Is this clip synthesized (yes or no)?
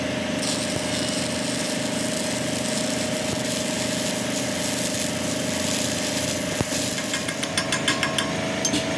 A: no